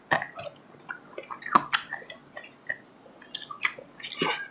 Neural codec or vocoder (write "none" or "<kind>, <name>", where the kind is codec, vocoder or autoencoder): none